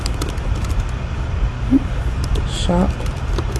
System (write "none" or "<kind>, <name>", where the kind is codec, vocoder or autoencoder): vocoder, BigVGAN v2